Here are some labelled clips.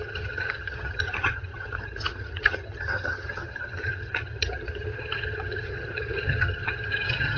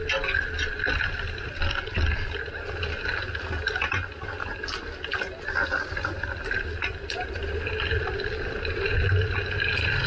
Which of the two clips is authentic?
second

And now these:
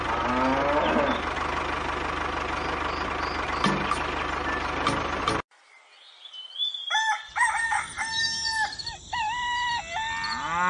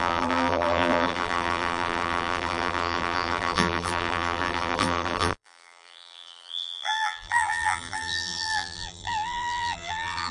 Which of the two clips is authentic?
first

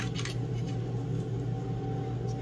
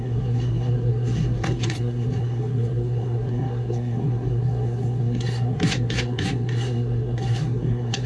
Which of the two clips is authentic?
first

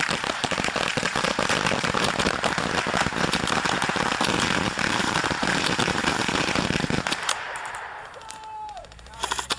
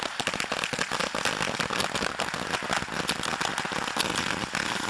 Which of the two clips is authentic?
second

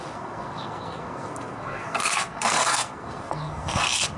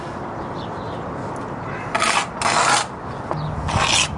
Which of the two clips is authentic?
second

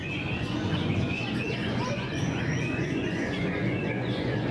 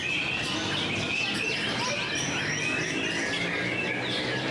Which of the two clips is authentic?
second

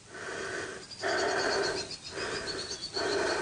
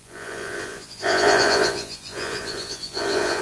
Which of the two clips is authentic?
first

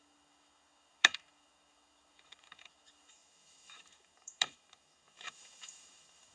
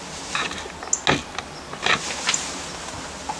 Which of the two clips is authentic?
second